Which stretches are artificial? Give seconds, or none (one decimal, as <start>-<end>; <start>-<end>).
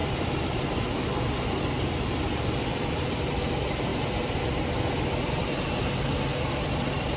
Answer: 0.0-3.5; 3.9-4.6; 6.3-7.2